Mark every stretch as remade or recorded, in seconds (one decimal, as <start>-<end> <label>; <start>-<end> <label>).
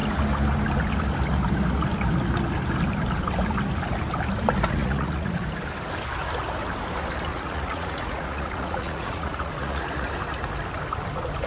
0.0-4.8 recorded; 4.8-5.4 remade; 5.4-7.3 recorded; 7.3-10.1 remade; 10.1-11.5 recorded